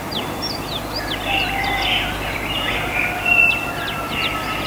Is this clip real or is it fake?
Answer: real